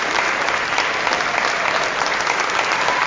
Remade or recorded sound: recorded